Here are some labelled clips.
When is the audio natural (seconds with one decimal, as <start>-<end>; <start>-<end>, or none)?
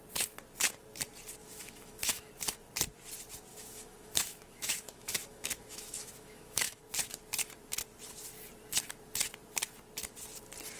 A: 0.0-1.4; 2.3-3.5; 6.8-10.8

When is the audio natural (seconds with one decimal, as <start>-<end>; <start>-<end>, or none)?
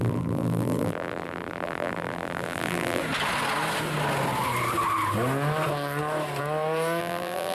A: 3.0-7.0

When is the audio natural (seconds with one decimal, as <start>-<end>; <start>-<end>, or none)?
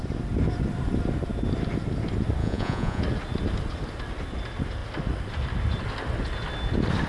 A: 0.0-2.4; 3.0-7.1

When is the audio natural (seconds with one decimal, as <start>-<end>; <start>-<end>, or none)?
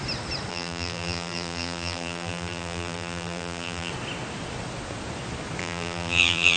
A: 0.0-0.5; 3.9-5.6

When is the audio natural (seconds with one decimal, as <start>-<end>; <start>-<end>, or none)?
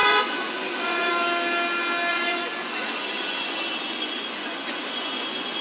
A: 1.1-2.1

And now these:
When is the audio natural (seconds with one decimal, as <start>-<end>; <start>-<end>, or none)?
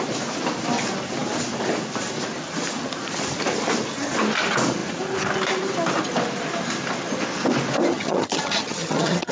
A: 0.0-7.9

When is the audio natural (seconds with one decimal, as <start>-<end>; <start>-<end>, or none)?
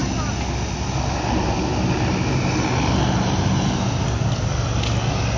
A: 0.0-5.4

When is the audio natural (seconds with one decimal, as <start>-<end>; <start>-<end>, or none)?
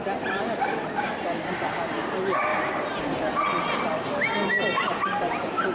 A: 0.0-5.7